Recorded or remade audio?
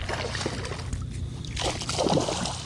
recorded